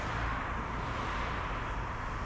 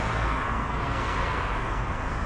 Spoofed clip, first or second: second